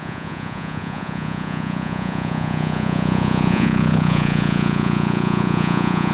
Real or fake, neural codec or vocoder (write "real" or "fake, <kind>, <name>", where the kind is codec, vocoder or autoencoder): fake, vocoder, Vocos